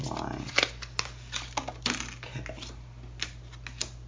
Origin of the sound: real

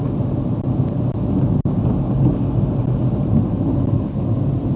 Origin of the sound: real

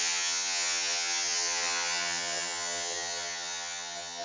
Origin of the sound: fake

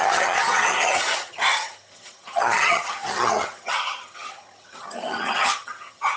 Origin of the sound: fake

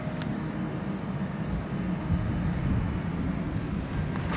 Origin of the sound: real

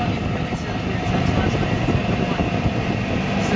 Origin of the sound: real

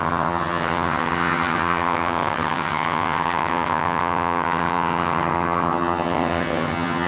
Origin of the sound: fake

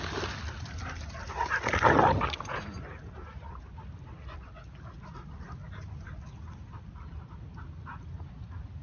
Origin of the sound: real